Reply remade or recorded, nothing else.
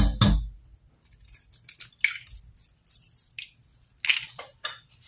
recorded